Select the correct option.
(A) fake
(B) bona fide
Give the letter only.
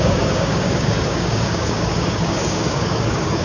A